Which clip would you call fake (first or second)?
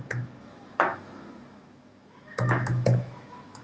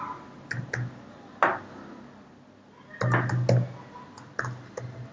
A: first